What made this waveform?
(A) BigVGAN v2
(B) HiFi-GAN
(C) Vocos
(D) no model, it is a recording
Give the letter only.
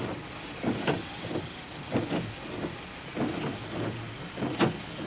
D